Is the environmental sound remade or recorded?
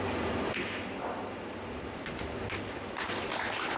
recorded